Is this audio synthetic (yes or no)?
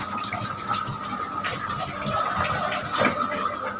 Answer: no